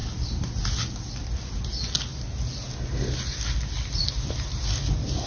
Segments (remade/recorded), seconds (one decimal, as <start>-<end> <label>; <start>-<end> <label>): 0.0-5.3 recorded